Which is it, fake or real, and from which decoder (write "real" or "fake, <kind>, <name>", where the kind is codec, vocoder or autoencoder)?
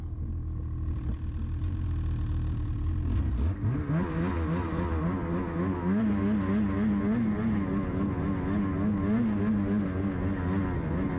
real